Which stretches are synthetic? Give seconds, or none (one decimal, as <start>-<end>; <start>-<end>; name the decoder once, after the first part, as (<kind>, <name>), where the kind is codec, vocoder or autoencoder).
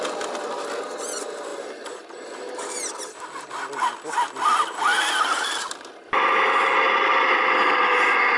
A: none